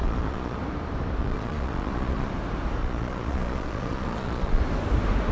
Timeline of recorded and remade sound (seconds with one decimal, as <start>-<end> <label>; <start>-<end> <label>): 0.0-0.6 remade; 0.6-1.2 recorded; 1.2-2.3 remade; 2.3-2.8 recorded; 2.8-4.6 remade; 4.6-5.3 recorded